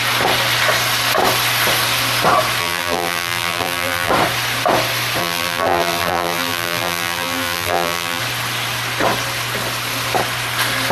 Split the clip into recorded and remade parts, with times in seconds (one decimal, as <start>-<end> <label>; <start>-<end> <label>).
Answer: 0.0-2.6 recorded; 2.6-4.1 remade; 4.1-5.2 recorded; 5.2-8.2 remade; 8.2-10.9 recorded